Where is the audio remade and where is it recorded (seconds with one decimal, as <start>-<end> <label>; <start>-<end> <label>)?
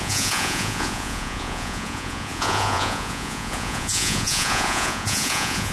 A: 0.0-5.7 remade